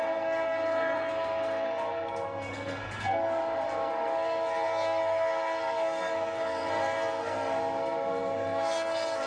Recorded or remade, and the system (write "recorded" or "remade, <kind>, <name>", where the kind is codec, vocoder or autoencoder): remade, codec, SNAC